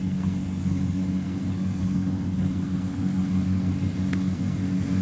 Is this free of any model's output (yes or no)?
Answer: no